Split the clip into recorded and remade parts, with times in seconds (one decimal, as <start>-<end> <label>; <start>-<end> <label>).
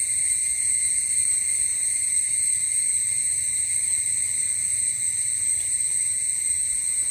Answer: 0.0-1.2 remade; 1.2-1.9 recorded; 1.9-3.7 remade; 3.7-4.8 recorded; 4.8-7.1 remade